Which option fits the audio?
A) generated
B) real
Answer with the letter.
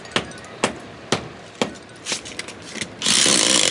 B